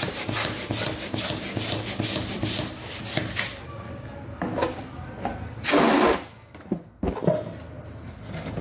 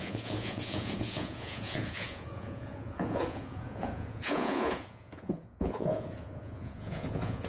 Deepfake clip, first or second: second